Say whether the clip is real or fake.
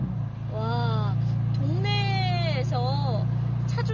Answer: real